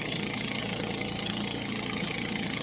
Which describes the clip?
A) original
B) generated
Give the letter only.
B